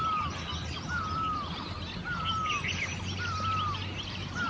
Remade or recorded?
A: recorded